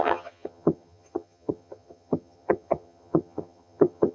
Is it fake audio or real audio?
fake